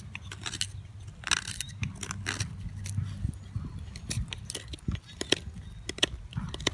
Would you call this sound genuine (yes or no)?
yes